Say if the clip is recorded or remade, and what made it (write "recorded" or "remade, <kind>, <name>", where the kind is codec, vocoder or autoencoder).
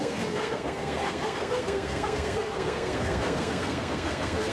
remade, codec, SNAC